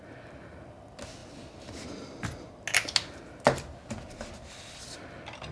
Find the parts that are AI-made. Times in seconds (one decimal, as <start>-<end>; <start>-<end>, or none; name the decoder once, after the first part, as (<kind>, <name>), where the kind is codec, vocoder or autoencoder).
none